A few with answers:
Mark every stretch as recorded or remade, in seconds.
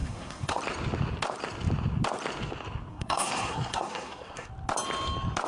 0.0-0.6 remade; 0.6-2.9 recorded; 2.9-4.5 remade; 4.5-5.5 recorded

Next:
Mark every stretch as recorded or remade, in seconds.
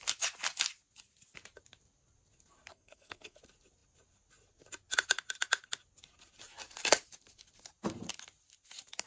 0.0-2.7 recorded; 2.7-3.4 remade; 3.4-9.1 recorded